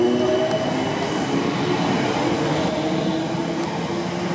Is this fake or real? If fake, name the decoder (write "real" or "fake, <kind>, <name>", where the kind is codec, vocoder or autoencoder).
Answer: real